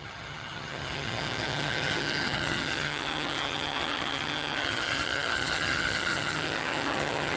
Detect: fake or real fake